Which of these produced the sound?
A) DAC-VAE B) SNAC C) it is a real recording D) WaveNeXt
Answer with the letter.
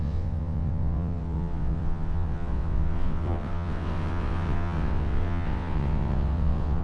D